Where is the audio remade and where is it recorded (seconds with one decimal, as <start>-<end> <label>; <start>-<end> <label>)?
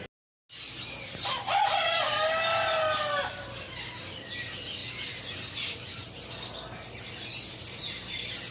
0.0-8.5 recorded